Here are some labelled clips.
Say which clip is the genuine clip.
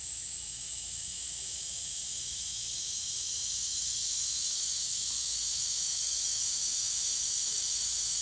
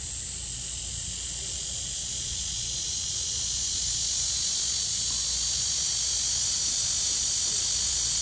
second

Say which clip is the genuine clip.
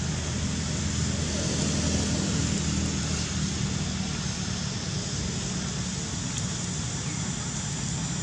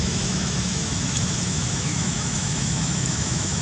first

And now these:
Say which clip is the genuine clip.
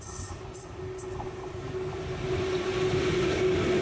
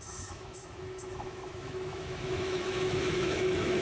first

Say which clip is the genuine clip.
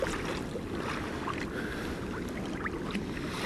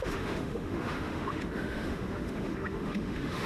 first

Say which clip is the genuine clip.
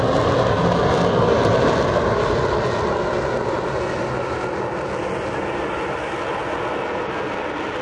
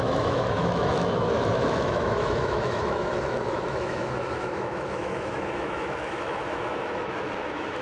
first